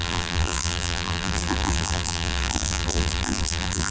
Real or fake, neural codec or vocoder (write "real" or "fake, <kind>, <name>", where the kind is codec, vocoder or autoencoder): fake, vocoder, BigVGAN v2